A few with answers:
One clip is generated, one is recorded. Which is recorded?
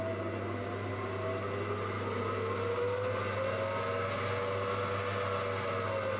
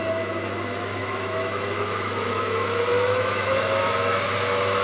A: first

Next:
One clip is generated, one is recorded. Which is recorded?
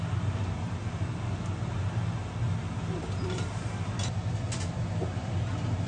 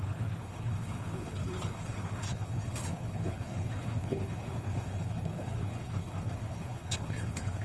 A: first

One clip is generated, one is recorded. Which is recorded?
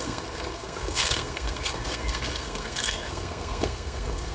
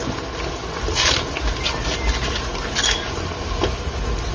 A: second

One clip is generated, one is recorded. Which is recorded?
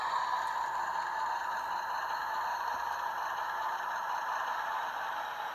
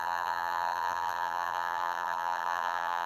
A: first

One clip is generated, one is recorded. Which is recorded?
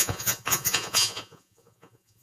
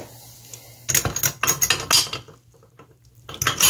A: second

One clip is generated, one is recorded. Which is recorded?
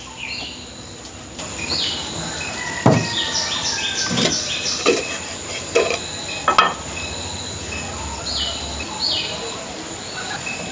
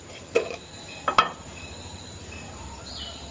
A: first